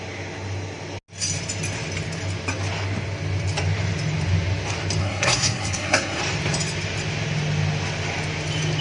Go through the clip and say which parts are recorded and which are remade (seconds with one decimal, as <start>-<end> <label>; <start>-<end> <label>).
0.0-5.0 recorded; 5.0-6.2 remade; 6.2-8.8 recorded